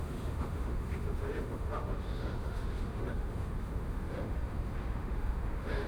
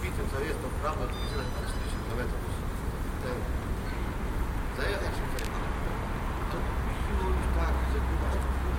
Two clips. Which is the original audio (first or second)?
second